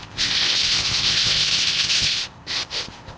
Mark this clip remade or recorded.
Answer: remade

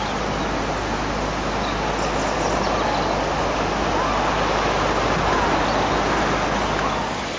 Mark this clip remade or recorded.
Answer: recorded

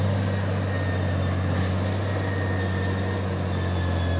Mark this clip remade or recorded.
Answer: recorded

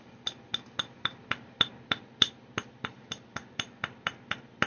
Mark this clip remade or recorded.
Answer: recorded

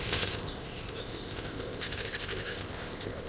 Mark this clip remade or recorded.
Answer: remade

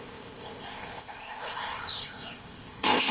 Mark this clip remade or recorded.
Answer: remade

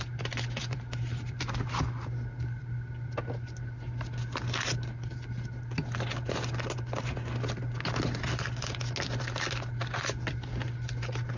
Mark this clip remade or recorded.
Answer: recorded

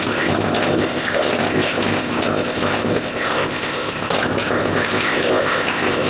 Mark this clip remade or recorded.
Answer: remade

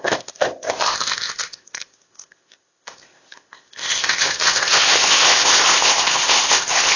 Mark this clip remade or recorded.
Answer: remade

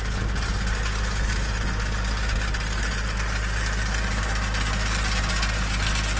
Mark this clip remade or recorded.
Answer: recorded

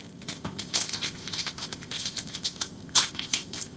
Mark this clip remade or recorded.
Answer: remade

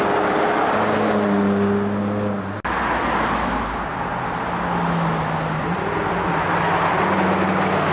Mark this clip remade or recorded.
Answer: recorded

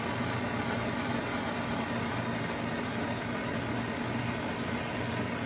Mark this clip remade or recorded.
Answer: recorded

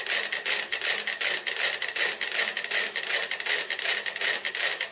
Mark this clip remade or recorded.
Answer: recorded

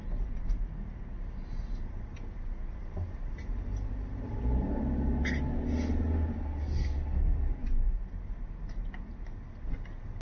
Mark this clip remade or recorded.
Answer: recorded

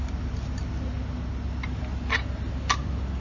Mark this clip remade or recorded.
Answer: recorded